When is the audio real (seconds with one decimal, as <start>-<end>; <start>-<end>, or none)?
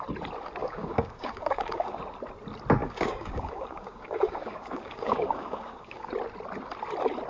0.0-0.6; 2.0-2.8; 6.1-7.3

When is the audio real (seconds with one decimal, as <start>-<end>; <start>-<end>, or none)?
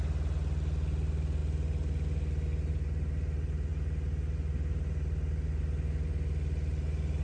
0.0-7.2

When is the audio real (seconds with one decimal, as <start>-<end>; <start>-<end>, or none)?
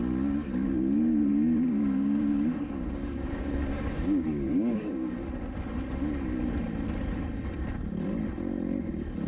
0.0-1.3; 5.2-9.3